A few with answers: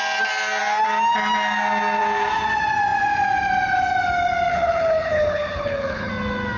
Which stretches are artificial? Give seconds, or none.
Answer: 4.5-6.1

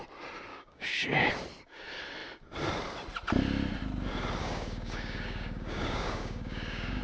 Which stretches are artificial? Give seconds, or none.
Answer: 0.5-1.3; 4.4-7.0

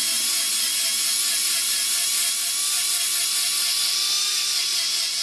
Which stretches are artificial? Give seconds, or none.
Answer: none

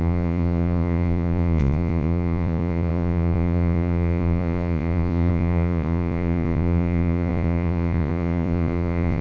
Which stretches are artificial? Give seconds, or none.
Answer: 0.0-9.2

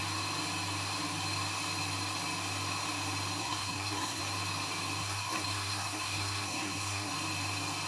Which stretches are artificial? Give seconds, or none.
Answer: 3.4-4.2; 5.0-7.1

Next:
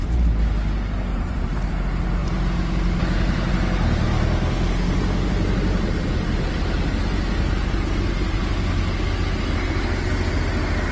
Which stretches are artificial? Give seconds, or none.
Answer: 1.1-1.7; 2.2-3.5